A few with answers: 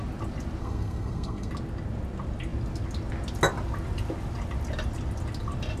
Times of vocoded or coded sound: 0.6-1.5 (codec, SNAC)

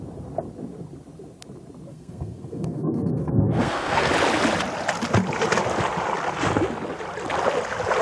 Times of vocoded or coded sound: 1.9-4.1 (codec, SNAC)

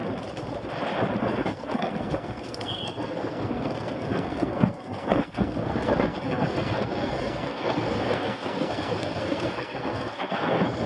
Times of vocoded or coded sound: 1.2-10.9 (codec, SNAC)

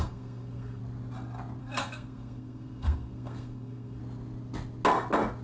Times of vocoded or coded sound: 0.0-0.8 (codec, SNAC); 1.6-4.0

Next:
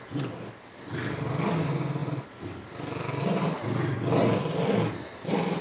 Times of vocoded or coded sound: none